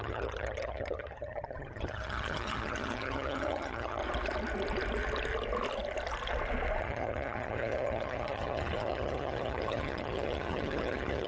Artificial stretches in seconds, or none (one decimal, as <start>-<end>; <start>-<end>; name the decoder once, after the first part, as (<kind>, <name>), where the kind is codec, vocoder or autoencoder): 0.0-4.0 (vocoder, HiFi-GAN); 6.8-11.3